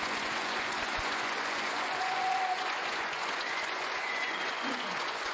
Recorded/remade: remade